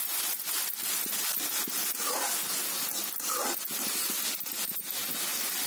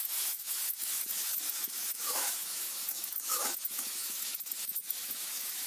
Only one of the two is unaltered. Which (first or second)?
first